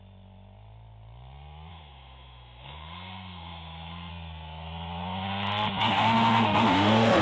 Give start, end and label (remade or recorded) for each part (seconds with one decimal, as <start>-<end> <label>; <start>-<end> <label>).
0.0-1.7 recorded; 1.7-4.1 remade; 4.1-5.8 recorded; 5.8-7.2 remade